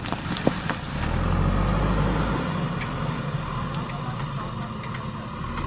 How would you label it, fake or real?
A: real